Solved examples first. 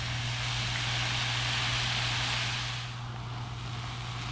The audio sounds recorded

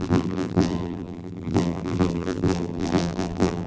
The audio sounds remade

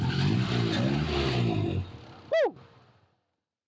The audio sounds recorded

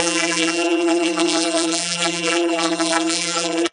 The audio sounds remade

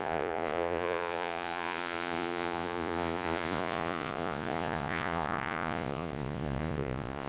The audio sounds remade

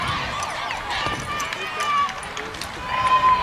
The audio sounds recorded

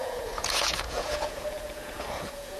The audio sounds remade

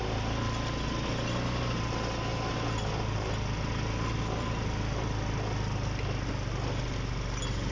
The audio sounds recorded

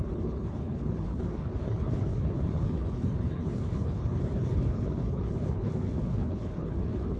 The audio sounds remade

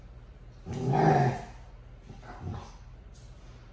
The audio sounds recorded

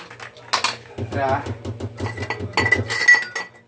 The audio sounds recorded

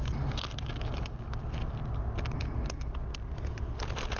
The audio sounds recorded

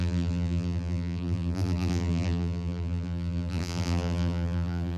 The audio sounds remade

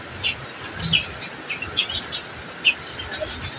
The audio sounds recorded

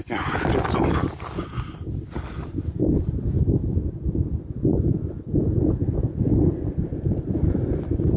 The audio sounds recorded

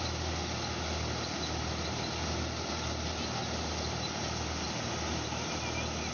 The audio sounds recorded